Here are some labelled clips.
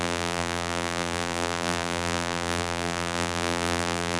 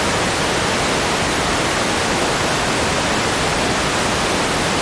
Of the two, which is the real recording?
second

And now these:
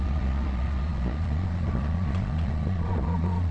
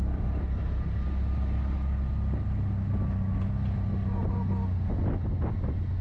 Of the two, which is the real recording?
second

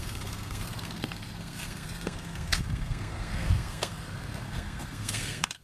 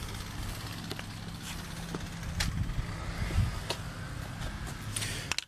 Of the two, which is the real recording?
second